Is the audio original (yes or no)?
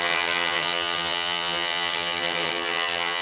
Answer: no